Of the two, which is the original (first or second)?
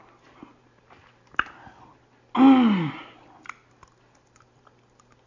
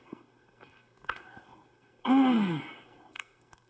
first